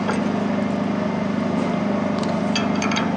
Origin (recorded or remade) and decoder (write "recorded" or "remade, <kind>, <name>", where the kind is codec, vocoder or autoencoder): recorded